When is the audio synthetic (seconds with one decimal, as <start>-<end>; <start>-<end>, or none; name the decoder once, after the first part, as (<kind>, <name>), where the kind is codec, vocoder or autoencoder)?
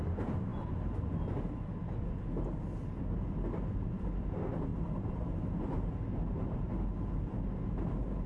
4.7-5.4 (vocoder, BigVGAN v2)